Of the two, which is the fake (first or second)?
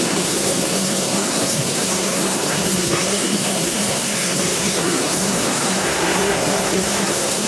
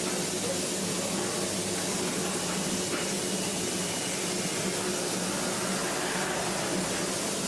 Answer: first